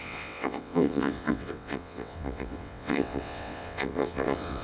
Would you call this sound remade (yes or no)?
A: yes